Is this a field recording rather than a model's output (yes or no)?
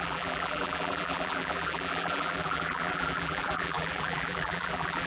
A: no